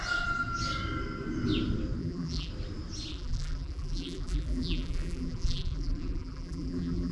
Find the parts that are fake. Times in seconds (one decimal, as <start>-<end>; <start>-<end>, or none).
2.0-2.5; 3.1-7.1

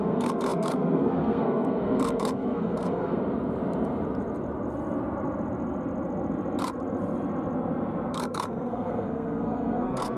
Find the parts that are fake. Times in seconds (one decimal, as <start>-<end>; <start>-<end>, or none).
0.0-3.2; 8.1-10.2